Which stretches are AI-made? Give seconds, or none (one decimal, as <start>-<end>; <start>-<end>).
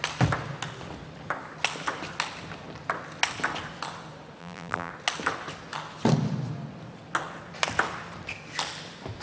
4.4-4.9